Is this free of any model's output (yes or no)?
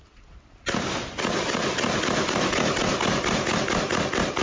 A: no